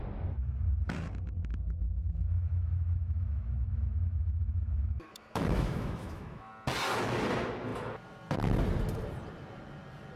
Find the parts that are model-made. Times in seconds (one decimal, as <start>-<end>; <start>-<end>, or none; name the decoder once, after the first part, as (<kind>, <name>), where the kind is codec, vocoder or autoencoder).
1.4-6.5 (autoencoder, DAC-VAE)